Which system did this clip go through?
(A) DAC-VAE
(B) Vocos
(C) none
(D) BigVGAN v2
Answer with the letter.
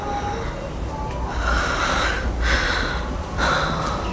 C